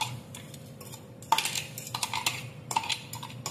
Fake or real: real